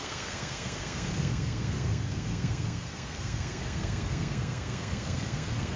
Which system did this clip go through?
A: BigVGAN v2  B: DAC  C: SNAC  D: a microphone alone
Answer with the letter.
C